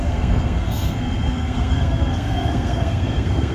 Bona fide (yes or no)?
no